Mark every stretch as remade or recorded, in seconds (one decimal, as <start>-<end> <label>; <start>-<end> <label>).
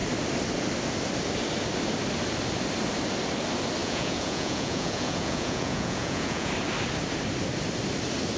0.0-3.8 recorded; 3.8-6.5 remade; 6.5-8.4 recorded